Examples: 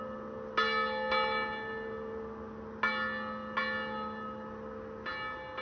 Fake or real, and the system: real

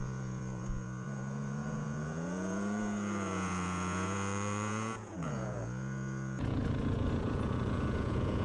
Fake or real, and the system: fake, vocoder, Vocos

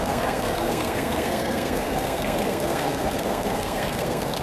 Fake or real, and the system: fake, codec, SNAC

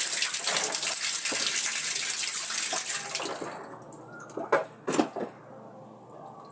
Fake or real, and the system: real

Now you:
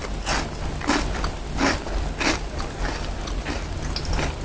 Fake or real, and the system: real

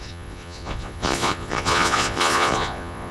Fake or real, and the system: fake, vocoder, Vocos